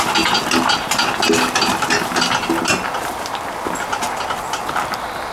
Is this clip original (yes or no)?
yes